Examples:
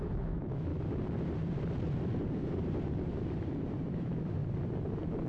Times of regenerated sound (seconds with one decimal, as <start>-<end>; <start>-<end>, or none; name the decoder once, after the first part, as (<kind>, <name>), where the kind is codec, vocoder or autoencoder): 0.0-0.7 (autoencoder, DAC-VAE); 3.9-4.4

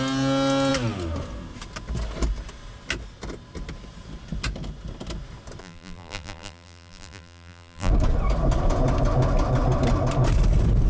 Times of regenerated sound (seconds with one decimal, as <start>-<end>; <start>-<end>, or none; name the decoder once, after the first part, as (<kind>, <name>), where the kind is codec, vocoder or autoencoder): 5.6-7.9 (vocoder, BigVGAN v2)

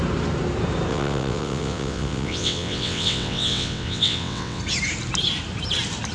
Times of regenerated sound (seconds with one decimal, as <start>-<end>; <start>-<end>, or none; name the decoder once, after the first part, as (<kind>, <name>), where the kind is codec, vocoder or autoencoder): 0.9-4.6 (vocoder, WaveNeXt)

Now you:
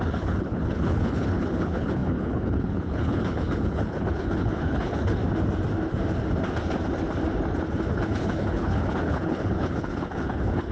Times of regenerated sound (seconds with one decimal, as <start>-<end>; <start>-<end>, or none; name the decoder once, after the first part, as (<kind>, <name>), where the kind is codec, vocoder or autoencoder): 0.0-5.2 (codec, HILCodec); 8.0-10.7